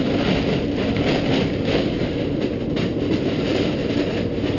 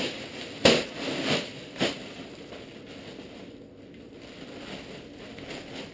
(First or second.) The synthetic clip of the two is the first